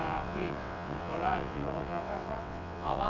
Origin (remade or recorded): remade